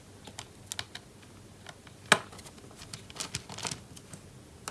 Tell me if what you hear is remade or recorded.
recorded